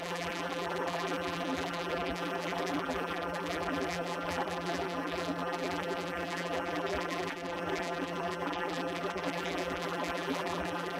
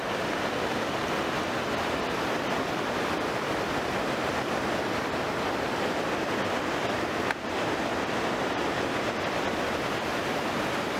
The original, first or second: second